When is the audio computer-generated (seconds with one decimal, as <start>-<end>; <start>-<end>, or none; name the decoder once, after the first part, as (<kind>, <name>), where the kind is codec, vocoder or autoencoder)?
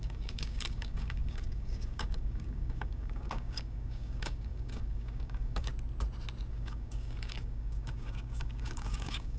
0.0-5.7 (codec, DAC); 6.5-9.4